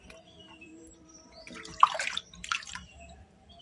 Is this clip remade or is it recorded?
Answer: remade